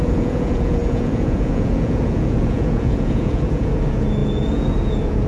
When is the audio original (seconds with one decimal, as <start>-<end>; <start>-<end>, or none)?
none